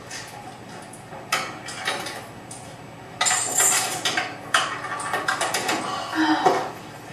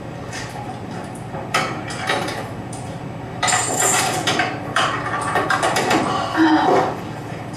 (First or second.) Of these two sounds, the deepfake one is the second